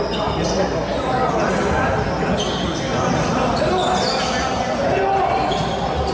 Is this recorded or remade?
recorded